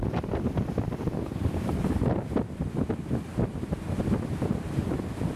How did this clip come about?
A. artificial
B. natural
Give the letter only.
B